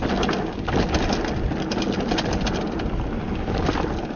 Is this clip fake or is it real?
real